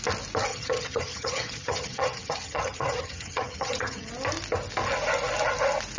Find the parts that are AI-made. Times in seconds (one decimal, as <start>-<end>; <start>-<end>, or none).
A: 0.5-4.1